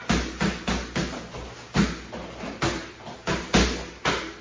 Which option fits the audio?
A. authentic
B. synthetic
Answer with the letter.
A